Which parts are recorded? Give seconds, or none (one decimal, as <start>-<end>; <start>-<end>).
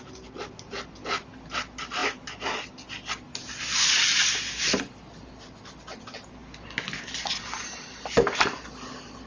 0.0-9.3